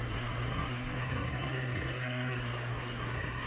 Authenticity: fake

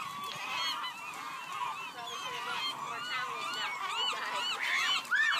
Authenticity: real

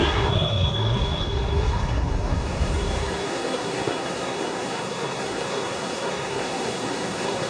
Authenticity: fake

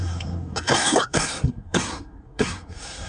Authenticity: fake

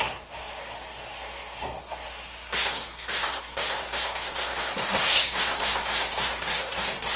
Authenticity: fake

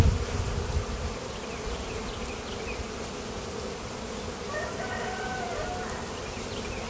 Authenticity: real